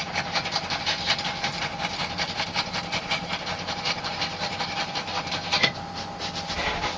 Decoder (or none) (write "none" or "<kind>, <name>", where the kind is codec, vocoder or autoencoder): none